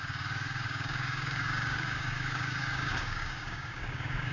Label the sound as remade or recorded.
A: remade